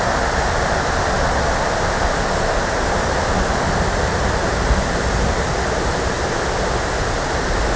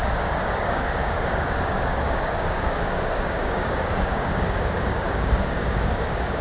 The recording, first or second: first